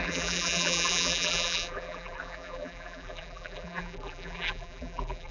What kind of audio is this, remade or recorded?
remade